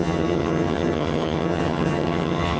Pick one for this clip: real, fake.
fake